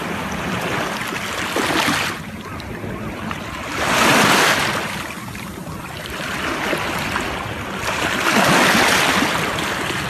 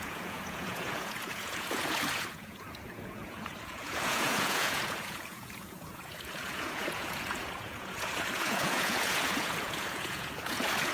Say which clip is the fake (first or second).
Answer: second